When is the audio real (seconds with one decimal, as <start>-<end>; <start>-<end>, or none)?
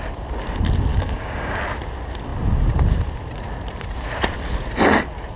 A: 0.0-0.9; 1.6-5.4